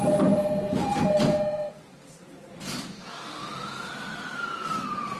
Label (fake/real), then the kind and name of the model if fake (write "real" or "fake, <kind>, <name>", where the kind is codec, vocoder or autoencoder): fake, vocoder, BigVGAN v2